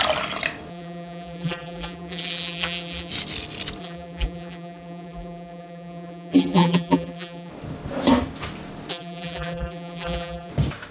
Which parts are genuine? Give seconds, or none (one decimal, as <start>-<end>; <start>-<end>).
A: 0.0-0.7; 3.1-3.8; 7.5-8.9; 10.5-10.9